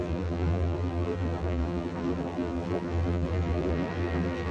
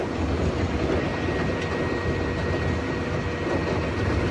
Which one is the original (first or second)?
second